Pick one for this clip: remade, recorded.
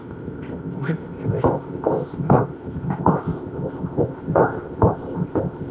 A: remade